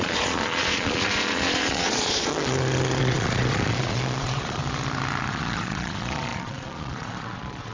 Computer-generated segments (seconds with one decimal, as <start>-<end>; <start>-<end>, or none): 0.0-2.3; 3.0-4.6; 5.3-7.7